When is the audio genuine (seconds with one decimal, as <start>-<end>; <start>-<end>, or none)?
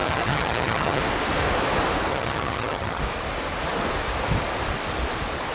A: 1.0-2.1; 3.0-5.5